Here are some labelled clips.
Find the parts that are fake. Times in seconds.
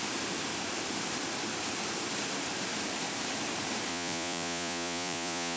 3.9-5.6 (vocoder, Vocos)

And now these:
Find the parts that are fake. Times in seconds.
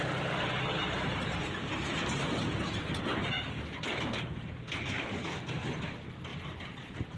none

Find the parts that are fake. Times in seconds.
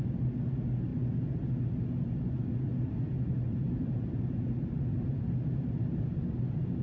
none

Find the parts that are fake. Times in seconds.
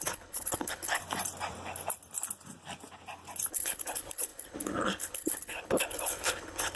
0.0-1.0 (codec, HILCodec); 3.5-6.8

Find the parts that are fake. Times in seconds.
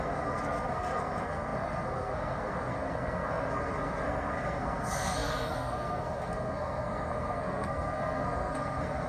0.0-9.1 (codec, SNAC)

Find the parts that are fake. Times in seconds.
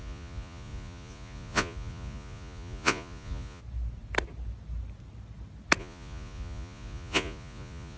0.0-3.6 (vocoder, Vocos); 5.8-8.0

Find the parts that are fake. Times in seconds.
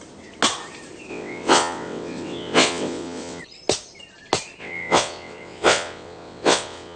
1.1-3.4 (vocoder, WaveNeXt); 4.6-7.0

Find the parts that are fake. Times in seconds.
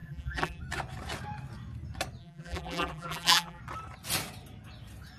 0.0-0.6 (vocoder, BigVGAN v2); 2.2-3.6